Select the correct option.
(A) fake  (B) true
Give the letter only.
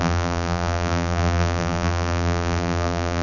A